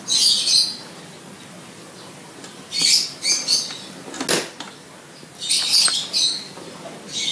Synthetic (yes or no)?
no